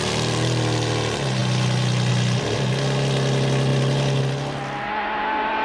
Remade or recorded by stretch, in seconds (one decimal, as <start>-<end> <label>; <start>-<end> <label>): 0.0-5.6 recorded